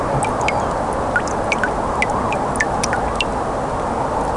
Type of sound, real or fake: real